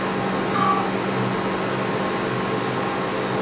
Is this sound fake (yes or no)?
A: no